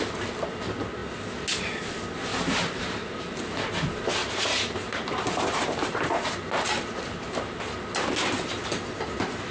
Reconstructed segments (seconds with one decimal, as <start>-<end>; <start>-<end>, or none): 2.3-3.1; 4.2-7.8